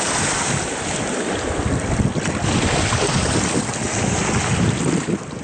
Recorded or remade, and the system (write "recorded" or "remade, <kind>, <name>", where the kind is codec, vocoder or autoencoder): recorded